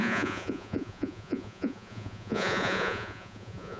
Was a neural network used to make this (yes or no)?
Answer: yes